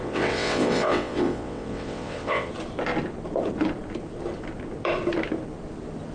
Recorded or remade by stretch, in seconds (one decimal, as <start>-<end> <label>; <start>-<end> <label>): 0.0-2.5 remade; 2.5-6.1 recorded